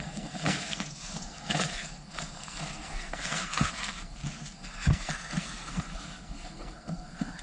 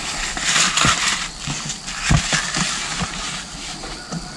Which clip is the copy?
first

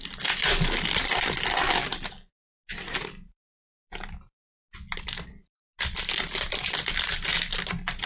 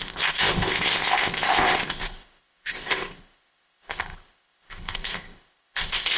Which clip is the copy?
second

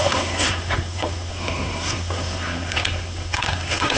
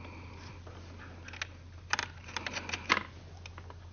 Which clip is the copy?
first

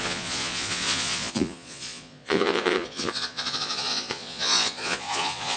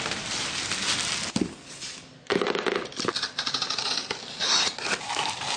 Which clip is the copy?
first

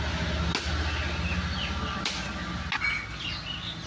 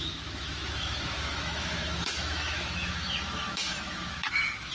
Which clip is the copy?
second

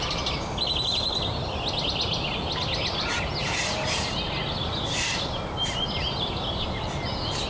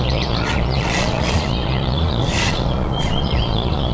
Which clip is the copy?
second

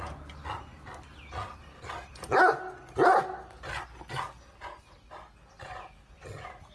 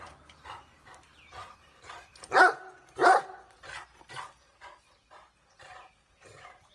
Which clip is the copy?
second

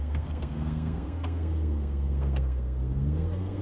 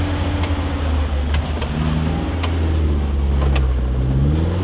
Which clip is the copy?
first